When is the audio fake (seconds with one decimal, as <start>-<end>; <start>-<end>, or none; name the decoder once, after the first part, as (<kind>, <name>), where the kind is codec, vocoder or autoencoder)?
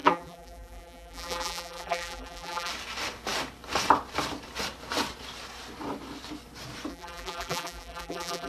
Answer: 0.0-2.7 (vocoder, BigVGAN v2); 6.9-8.5